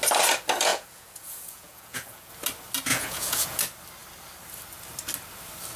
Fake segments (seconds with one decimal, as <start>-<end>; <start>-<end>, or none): 0.7-2.3; 2.9-3.6